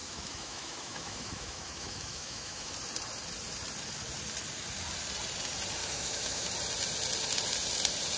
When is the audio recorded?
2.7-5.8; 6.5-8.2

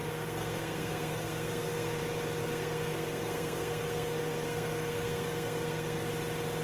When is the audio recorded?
2.0-2.4; 6.1-6.6

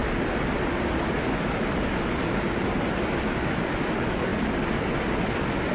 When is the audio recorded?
0.0-5.7

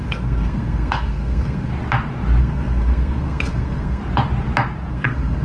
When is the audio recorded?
1.7-2.4; 4.0-4.9